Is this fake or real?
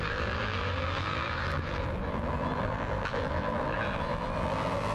fake